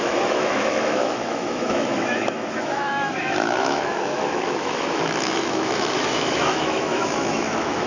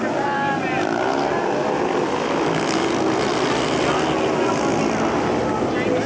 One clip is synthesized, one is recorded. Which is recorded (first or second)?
second